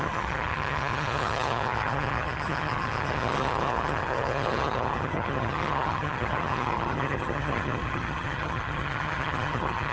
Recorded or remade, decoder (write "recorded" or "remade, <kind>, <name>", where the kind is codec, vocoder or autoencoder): remade, vocoder, HiFi-GAN